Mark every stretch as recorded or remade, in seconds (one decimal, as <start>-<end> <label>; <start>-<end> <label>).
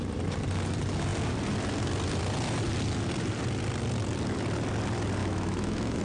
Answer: 0.0-5.2 recorded; 5.2-6.0 remade